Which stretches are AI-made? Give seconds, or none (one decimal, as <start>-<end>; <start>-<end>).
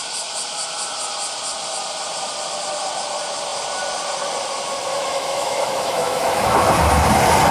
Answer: 4.9-6.7